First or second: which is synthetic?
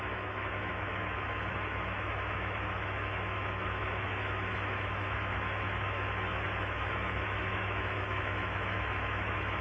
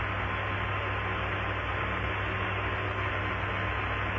first